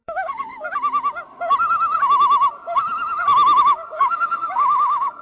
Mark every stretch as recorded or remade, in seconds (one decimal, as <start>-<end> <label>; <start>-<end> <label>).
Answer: 0.0-0.5 remade; 0.5-3.6 recorded; 3.6-5.2 remade